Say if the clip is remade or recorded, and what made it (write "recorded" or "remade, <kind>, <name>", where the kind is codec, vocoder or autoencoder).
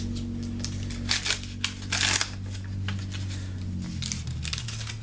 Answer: recorded